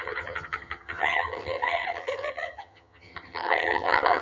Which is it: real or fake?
fake